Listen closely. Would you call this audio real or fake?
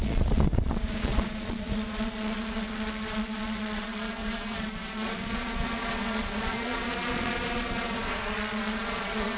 fake